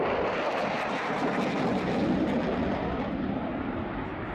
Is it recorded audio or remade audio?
recorded